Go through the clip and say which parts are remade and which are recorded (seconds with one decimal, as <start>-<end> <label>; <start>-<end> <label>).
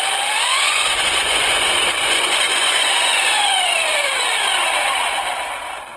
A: 0.0-0.5 recorded; 0.5-3.6 remade; 3.6-6.0 recorded